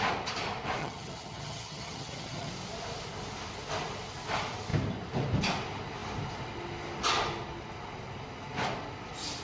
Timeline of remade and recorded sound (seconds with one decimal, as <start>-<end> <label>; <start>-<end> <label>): 0.0-0.8 recorded; 0.8-2.5 remade; 2.5-9.4 recorded